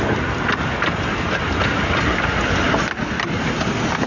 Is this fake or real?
real